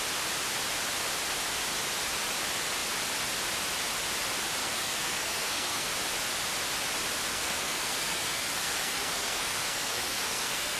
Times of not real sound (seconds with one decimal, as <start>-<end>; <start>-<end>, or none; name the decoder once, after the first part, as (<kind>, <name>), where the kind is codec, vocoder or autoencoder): 4.6-5.9 (codec, SNAC); 7.3-10.8